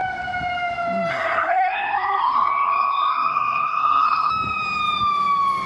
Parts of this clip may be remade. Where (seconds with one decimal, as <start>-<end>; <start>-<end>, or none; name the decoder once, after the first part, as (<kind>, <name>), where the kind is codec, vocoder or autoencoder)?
1.1-4.3 (codec, SNAC)